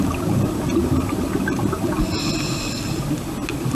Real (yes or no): yes